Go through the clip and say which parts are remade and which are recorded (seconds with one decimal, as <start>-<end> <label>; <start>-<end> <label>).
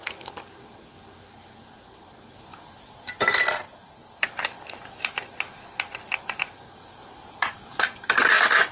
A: 0.0-8.7 recorded